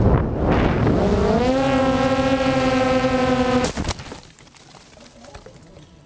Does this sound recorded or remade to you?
recorded